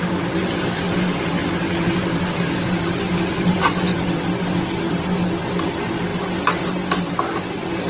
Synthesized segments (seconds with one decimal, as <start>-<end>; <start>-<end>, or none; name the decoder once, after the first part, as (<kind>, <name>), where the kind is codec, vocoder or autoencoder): none